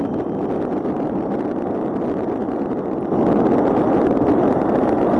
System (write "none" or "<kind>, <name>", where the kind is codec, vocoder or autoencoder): none